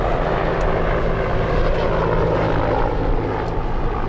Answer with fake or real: real